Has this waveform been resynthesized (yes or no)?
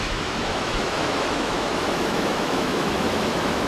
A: yes